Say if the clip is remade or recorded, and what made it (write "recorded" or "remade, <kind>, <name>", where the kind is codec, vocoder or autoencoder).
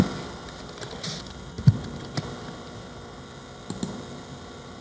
recorded